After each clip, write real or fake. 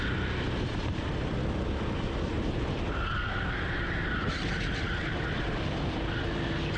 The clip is real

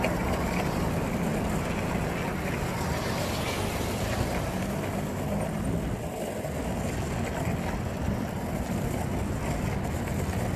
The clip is real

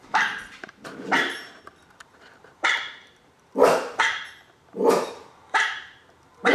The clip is fake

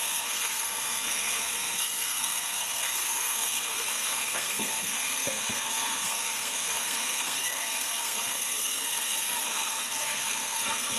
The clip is fake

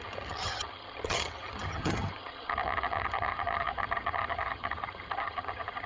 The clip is fake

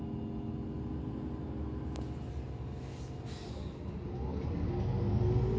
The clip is real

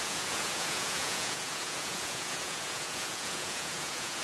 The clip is fake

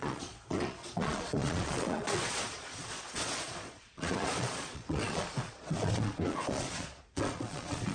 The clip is fake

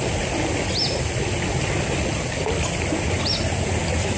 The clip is real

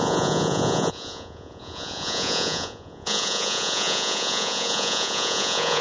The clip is fake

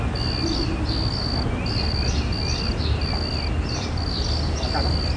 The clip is real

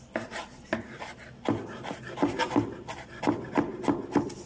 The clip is real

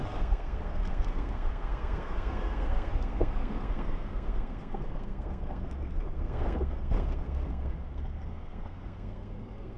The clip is fake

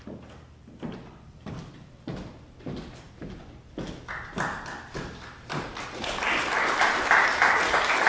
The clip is real